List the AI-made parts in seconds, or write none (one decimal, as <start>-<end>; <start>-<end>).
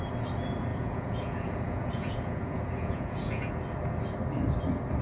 0.7-3.5